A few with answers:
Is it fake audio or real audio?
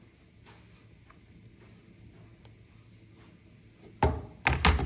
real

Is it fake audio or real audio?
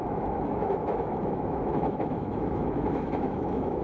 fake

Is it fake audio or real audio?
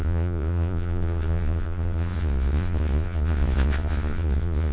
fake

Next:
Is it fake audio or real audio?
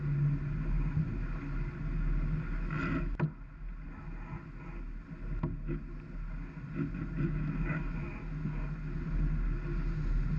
real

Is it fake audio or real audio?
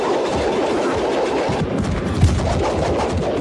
real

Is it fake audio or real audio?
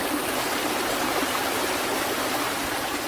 fake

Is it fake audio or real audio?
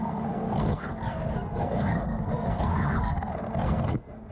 fake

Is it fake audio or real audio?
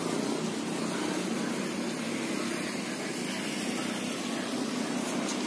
real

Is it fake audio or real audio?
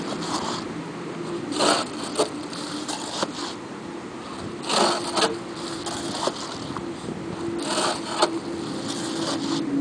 real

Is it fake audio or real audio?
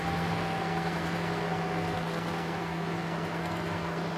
fake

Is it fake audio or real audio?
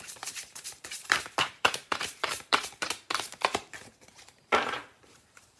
fake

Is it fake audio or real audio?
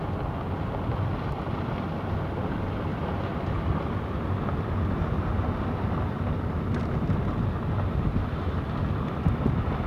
real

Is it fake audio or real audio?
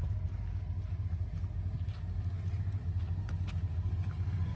real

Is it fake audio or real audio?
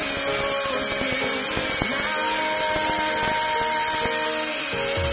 real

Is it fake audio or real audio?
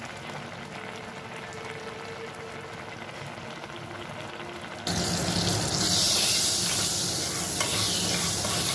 real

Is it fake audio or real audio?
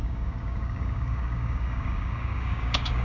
fake